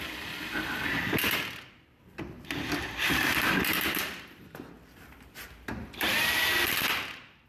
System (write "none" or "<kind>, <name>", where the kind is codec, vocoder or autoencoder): vocoder, BigVGAN v2